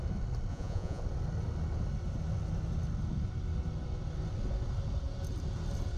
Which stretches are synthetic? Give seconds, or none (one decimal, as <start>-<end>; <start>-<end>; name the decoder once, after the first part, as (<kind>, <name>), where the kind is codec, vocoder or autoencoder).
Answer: 0.5-1.0 (vocoder, Vocos)